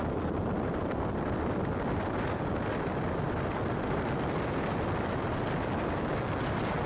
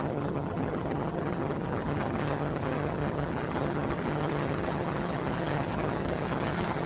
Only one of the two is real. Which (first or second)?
first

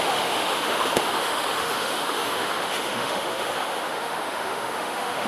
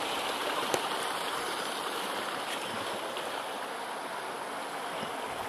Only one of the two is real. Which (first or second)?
second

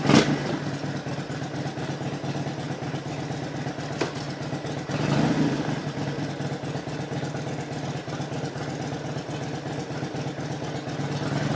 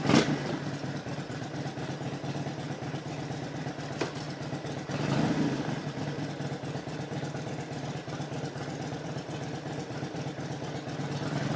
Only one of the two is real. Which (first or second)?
first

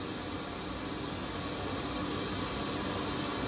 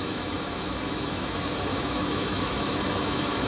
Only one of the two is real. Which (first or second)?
first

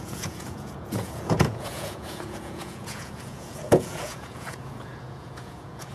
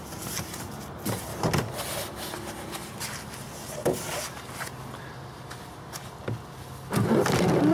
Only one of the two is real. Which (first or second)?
second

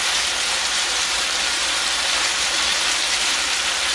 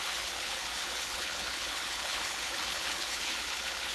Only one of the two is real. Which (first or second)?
first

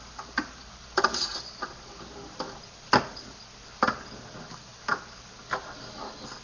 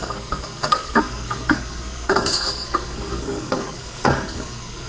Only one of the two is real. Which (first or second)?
first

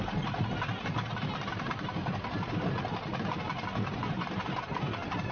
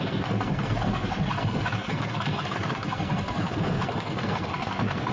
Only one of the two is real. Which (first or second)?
first